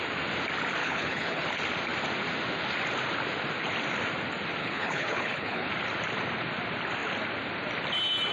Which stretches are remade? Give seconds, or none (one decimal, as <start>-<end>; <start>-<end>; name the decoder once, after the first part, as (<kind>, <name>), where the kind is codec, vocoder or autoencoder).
0.8-1.4 (codec, HILCodec); 4.6-5.7